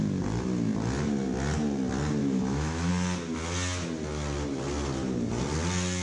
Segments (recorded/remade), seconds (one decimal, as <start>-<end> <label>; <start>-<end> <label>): 0.0-2.2 recorded; 2.2-2.9 remade; 2.9-6.0 recorded